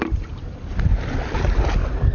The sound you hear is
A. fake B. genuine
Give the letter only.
B